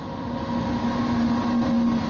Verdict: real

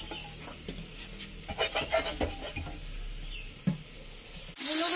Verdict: real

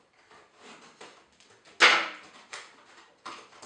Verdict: real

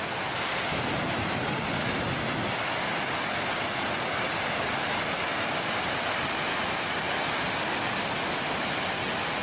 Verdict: real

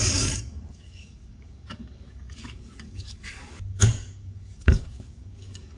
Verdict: fake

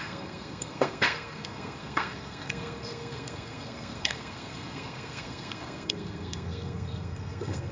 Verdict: fake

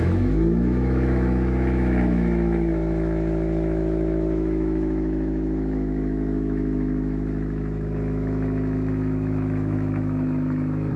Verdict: fake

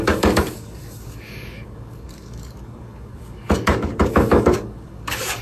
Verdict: fake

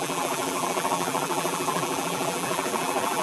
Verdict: fake